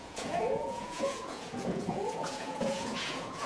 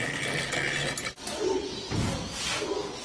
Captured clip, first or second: second